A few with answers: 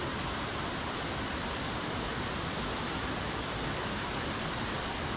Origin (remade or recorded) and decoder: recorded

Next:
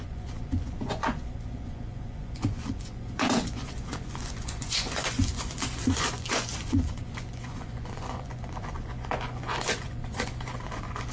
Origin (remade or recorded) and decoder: remade, vocoder, Vocos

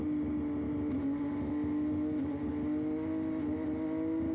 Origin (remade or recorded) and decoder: recorded